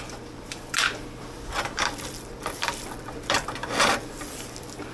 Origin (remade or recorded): remade